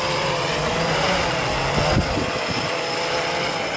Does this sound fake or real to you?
real